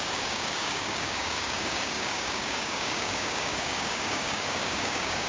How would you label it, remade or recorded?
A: remade